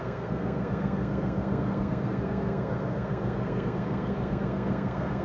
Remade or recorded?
remade